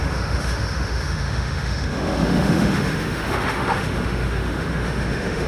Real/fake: fake